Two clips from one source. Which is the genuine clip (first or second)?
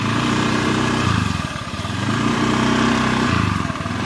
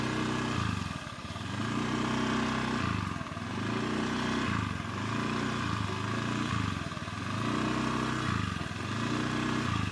second